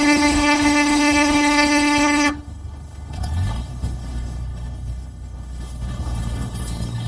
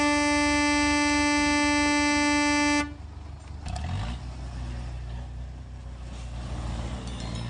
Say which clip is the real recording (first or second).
second